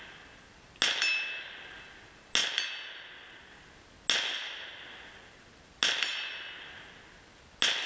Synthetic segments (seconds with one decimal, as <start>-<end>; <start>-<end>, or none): none